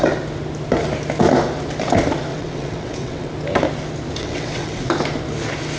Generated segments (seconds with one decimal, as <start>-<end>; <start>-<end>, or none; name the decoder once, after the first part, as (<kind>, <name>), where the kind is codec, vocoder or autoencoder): 2.3-3.3 (vocoder, WaveNeXt); 4.2-4.9